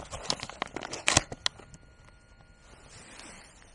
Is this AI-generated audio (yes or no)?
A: no